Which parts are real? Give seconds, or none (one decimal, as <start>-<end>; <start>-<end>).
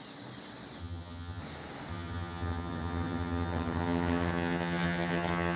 0.0-0.8; 1.4-1.9